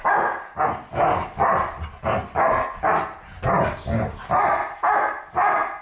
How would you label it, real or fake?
real